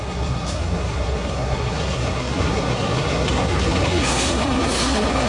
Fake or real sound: fake